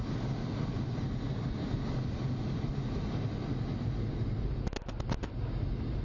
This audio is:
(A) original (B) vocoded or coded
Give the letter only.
A